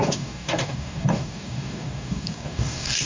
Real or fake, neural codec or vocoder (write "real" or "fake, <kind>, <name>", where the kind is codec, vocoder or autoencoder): fake, codec, DAC